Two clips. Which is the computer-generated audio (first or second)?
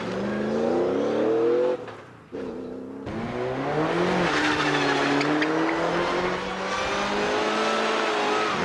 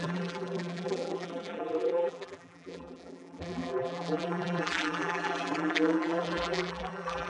second